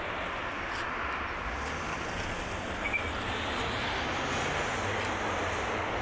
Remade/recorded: recorded